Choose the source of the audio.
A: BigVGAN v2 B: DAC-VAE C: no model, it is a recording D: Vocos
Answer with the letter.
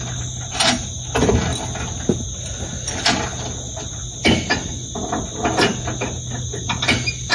C